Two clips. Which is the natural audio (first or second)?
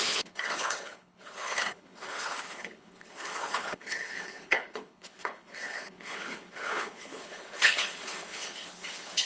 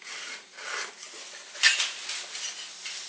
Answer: second